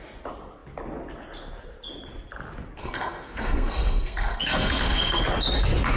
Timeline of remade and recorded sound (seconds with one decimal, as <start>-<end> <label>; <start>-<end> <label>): 0.0-2.8 recorded; 2.8-5.2 remade; 5.2-6.0 recorded